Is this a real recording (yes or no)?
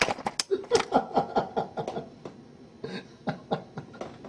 yes